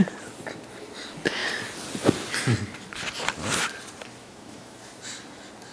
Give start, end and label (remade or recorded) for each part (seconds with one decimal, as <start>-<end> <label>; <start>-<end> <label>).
0.0-4.2 recorded; 4.2-4.8 remade; 4.8-5.7 recorded